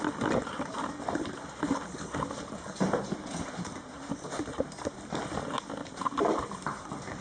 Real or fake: real